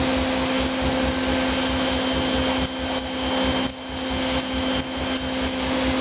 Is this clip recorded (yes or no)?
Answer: yes